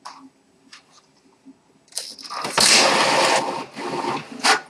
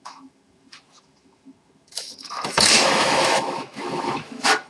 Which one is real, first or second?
first